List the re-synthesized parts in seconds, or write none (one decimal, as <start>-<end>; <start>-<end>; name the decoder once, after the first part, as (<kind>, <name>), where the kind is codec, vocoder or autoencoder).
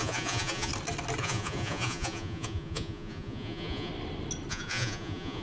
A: 0.0-0.7 (vocoder, Vocos); 1.2-3.9; 4.5-5.4